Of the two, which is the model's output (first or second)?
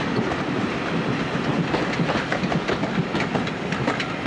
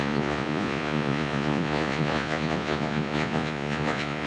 second